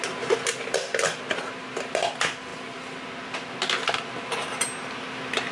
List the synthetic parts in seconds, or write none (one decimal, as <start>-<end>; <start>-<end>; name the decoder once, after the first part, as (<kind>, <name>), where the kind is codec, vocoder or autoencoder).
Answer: none